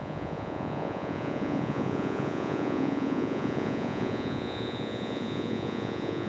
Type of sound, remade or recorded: remade